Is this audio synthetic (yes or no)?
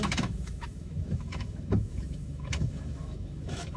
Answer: yes